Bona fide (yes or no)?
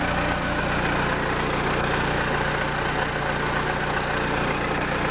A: yes